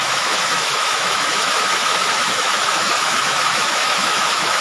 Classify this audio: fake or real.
fake